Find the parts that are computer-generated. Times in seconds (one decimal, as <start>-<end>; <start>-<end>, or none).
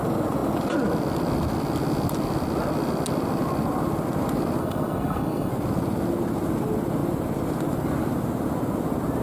4.6-5.5